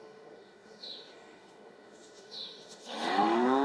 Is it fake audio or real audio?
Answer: fake